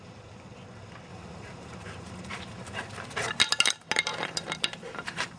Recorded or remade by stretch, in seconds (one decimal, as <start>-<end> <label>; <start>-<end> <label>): 0.0-1.1 recorded; 1.1-3.4 remade; 3.4-4.1 recorded; 4.1-5.4 remade